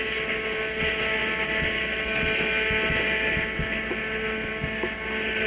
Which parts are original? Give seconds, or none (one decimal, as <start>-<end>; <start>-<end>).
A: 0.0-5.5